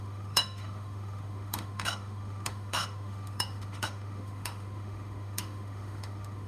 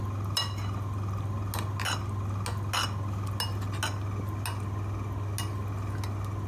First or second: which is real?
second